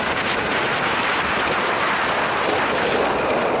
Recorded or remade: recorded